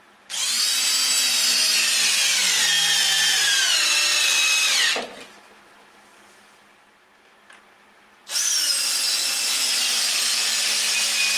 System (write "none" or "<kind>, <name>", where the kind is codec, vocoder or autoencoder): none